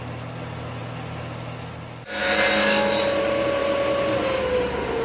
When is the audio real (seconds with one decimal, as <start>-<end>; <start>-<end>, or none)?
0.0-5.0